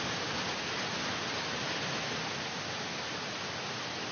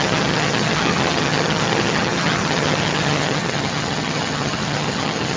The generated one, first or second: second